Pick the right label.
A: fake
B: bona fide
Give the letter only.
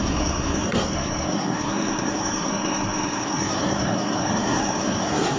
A